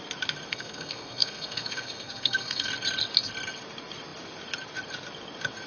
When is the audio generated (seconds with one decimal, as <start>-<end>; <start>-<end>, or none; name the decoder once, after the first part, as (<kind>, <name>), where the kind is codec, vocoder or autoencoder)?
0.5-2.7 (codec, SNAC)